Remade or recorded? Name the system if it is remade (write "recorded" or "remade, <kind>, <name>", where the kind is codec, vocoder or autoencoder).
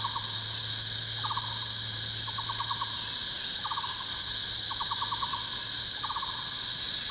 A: recorded